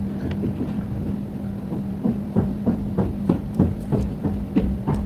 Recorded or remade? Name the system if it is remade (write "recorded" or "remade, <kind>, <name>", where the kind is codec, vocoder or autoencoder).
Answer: remade, vocoder, BigVGAN v2